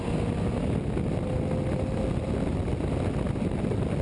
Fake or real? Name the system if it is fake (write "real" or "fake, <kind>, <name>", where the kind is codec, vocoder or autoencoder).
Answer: real